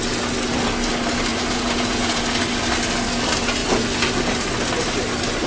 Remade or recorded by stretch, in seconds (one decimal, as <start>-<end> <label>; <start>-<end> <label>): 0.0-1.3 recorded; 1.3-2.2 remade; 2.2-5.5 recorded